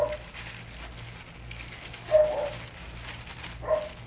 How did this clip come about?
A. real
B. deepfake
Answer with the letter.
A